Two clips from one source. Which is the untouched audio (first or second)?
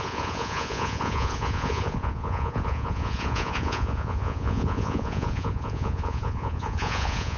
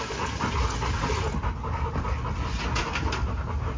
second